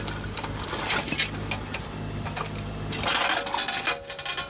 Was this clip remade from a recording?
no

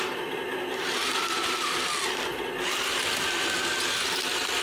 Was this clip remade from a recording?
yes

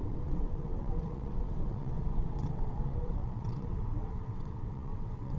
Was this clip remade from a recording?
yes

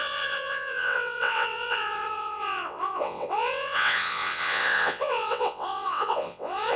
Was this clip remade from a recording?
yes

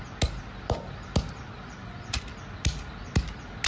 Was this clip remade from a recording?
no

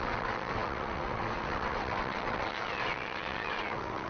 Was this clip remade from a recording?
yes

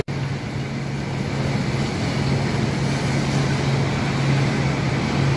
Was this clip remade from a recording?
no